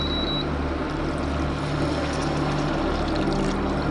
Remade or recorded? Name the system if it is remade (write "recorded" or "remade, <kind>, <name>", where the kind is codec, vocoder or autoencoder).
recorded